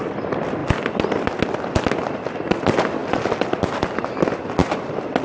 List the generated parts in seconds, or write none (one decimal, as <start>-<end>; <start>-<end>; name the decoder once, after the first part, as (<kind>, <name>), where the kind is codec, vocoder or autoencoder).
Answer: none